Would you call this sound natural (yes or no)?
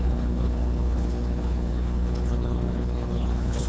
no